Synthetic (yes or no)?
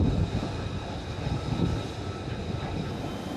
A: no